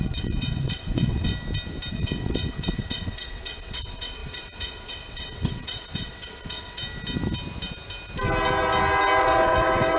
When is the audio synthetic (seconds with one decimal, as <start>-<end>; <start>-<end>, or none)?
0.0-1.3; 1.9-6.8; 9.2-10.0